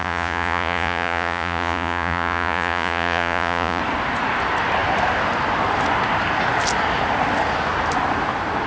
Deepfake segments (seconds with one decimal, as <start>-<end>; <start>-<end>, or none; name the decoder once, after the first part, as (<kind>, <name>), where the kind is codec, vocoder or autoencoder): 0.0-3.8 (vocoder, Vocos)